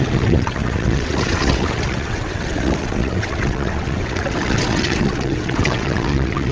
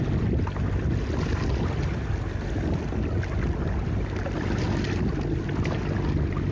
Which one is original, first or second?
second